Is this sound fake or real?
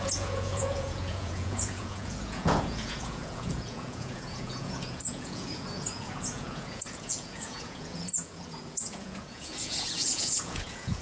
fake